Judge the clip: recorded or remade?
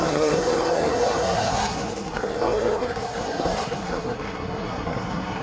remade